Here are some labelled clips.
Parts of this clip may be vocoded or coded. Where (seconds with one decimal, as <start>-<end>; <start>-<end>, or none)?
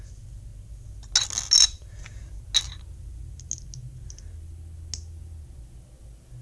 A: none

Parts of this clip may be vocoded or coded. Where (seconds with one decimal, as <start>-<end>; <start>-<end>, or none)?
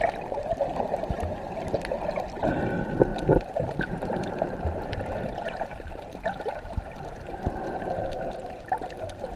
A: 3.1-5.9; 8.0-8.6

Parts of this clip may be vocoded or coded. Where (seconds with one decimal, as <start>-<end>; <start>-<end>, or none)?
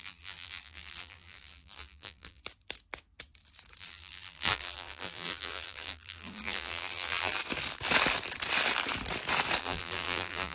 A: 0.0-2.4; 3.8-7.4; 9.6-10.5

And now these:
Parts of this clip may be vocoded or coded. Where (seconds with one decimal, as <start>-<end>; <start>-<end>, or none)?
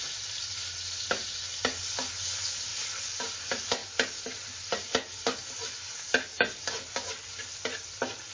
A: none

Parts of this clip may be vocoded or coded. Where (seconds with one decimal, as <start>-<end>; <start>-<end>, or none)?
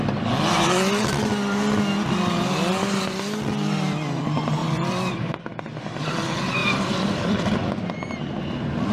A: 4.6-5.6; 6.6-7.6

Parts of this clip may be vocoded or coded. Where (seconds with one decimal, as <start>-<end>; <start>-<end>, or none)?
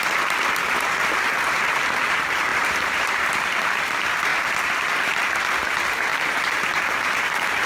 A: 2.5-3.2; 6.1-7.7